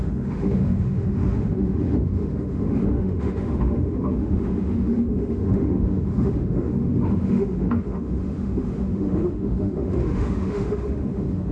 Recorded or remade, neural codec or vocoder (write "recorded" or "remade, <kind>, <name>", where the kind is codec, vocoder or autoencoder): remade, autoencoder, DAC-VAE